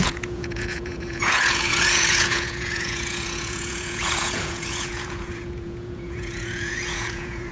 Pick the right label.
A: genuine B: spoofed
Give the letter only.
B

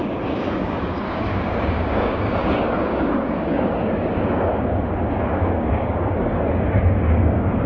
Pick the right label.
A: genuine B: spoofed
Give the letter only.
B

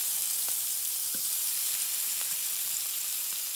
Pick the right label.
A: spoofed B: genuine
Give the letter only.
A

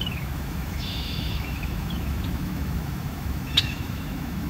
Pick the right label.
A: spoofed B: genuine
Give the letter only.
A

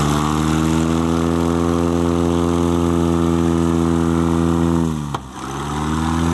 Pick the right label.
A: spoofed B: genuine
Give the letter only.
B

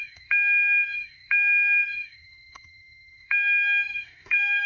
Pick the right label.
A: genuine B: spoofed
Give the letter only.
B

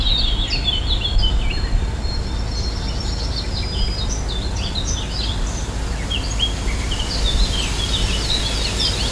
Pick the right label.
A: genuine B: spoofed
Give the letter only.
A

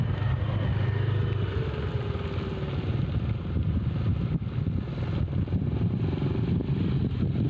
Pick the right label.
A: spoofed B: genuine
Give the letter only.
B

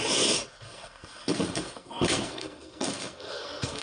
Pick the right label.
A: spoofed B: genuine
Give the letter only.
A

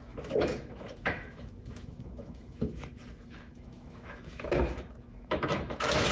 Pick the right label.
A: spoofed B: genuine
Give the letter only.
A